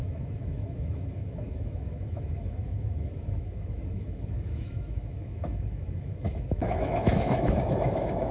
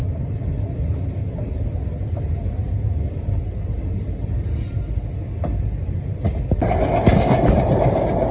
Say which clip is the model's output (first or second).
first